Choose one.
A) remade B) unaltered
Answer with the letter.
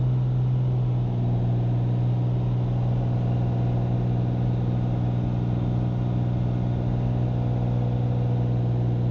B